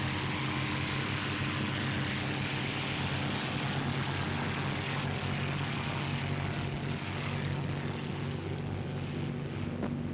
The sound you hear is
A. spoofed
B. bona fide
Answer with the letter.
B